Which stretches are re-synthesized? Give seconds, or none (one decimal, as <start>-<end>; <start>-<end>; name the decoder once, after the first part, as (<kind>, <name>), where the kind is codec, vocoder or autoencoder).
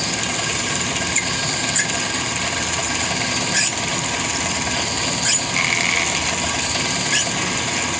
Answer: none